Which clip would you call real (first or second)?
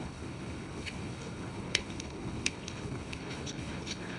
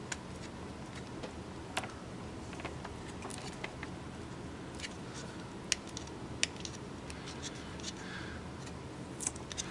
second